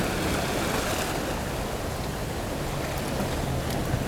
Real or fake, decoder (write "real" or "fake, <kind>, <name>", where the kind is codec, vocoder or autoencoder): real